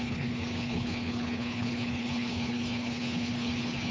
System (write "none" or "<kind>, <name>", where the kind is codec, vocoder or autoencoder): codec, HILCodec